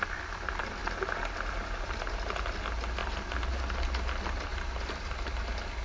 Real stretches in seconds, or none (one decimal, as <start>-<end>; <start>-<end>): 0.0-3.0; 3.6-4.5; 5.3-5.8